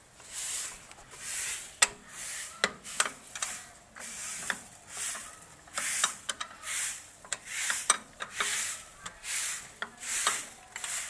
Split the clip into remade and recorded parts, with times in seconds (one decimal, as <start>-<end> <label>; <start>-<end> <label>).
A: 0.0-4.2 recorded; 4.2-8.9 remade; 8.9-11.1 recorded